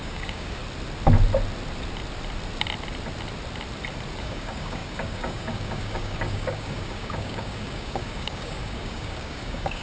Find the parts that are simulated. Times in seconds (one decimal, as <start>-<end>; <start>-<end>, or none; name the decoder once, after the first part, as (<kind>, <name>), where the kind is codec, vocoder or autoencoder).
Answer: 0.0-0.6 (codec, DAC); 4.2-9.8